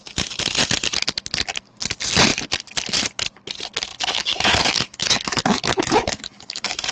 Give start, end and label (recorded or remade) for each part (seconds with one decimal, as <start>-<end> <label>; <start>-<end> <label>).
0.0-3.9 recorded; 3.9-6.9 remade